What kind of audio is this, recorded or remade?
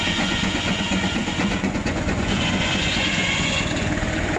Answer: remade